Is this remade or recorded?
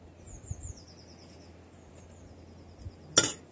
recorded